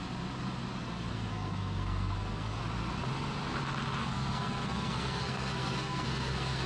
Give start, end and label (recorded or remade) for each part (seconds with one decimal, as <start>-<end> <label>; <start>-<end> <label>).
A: 0.0-1.1 recorded; 1.1-2.6 remade; 2.6-4.0 recorded; 4.0-6.7 remade